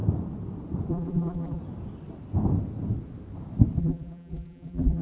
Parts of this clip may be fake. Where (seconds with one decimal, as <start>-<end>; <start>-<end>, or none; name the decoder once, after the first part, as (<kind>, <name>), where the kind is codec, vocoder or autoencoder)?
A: 0.9-1.6 (vocoder, BigVGAN v2); 3.8-5.0